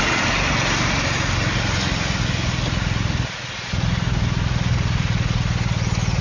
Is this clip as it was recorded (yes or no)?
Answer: yes